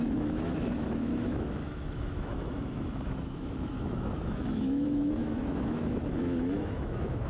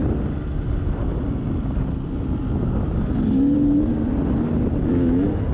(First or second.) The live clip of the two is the second